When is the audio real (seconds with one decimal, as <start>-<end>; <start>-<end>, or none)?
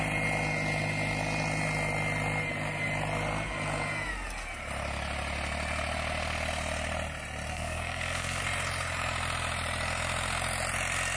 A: 0.0-7.5; 8.4-11.2